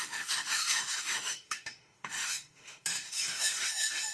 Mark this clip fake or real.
fake